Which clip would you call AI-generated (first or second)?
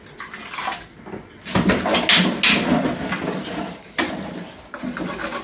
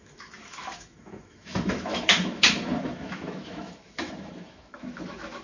second